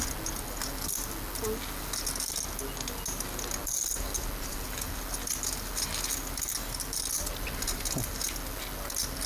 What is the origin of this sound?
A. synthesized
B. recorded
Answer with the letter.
B